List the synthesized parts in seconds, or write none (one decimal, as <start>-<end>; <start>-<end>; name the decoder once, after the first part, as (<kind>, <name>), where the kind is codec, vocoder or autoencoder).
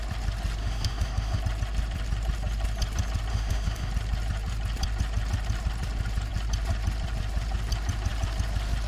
0.6-1.4 (autoencoder, DAC-VAE); 3.3-3.9